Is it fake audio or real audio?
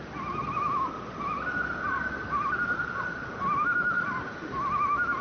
real